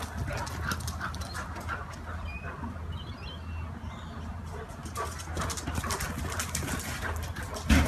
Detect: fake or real real